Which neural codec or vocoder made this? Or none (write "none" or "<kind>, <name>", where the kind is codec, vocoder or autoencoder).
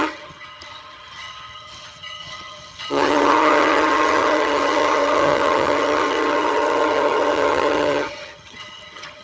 vocoder, HiFi-GAN